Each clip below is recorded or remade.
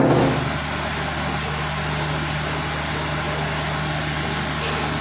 recorded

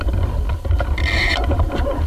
recorded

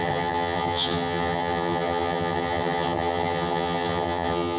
remade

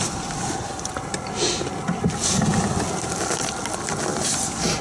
recorded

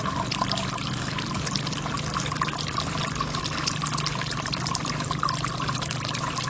recorded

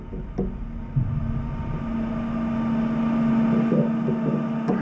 recorded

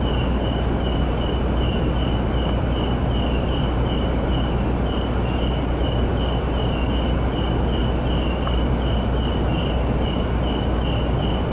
recorded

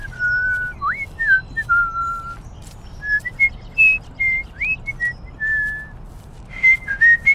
recorded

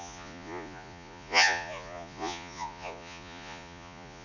remade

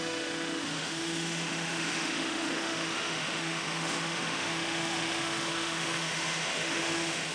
remade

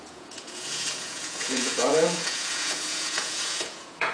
remade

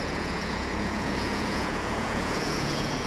remade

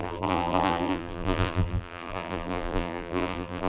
remade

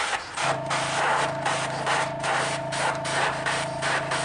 remade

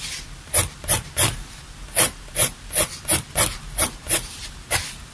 recorded